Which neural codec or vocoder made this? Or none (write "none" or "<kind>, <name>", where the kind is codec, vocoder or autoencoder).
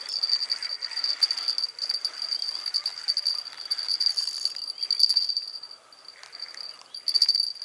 none